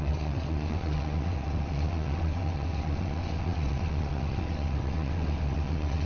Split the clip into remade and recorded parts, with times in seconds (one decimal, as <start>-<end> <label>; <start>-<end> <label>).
0.0-6.1 remade